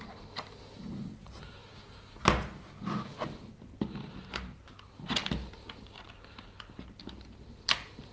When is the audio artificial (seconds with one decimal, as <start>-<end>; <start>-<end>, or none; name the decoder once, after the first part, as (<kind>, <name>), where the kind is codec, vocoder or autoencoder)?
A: 1.6-2.2 (codec, DAC)